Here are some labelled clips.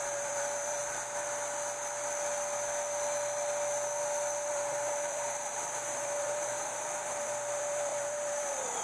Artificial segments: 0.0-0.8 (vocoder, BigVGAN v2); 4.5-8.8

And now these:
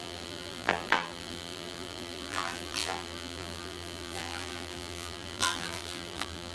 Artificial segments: 0.0-6.5 (vocoder, BigVGAN v2)

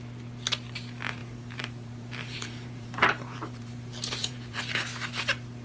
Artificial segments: 1.2-4.6 (vocoder, BigVGAN v2)

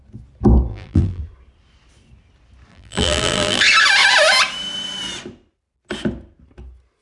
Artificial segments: 0.7-1.2 (vocoder, BigVGAN v2); 2.7-3.6

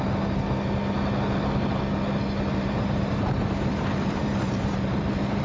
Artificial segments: 2.5-4.9 (vocoder, BigVGAN v2)

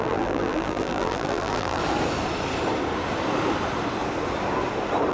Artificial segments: 0.0-1.8 (vocoder, BigVGAN v2)